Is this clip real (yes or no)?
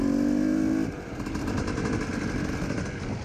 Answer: yes